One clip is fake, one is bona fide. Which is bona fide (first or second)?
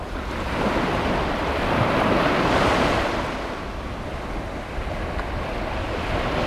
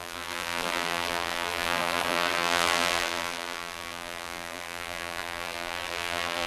first